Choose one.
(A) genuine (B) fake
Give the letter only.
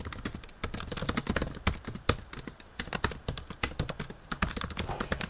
A